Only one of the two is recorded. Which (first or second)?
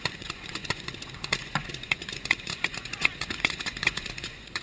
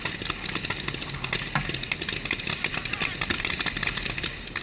second